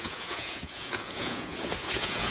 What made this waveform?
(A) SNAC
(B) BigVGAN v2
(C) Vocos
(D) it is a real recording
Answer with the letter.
C